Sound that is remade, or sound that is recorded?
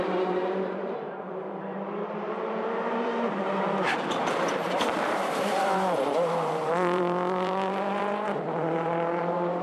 remade